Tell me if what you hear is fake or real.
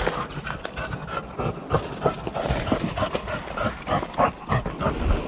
real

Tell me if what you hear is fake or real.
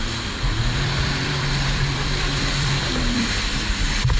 fake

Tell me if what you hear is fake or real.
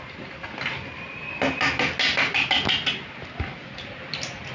real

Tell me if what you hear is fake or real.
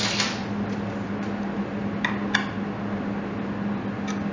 real